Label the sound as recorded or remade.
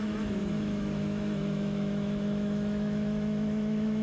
remade